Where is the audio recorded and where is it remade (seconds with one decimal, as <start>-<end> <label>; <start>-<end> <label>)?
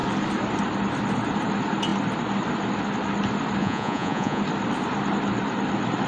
0.0-3.6 recorded; 3.6-4.4 remade; 4.4-6.1 recorded